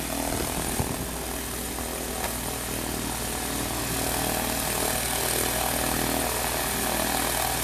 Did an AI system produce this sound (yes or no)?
no